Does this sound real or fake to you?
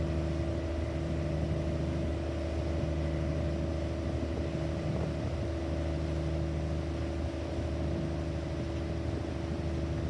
real